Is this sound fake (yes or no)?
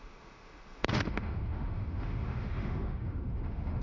yes